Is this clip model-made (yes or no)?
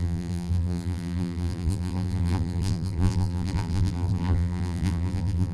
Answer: yes